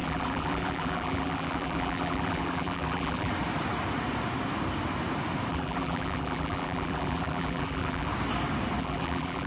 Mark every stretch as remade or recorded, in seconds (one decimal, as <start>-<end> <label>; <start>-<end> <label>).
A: 0.0-3.3 remade; 3.3-5.5 recorded; 5.5-8.1 remade; 8.1-8.8 recorded; 8.8-9.5 remade